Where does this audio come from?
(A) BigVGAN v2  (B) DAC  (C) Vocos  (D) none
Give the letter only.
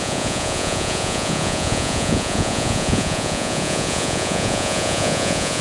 C